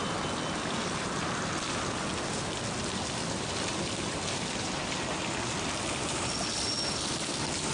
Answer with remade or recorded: recorded